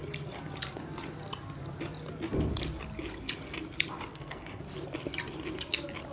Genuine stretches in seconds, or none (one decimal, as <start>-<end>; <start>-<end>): 0.0-4.1; 4.6-6.1